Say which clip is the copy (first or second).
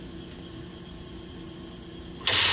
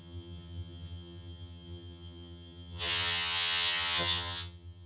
second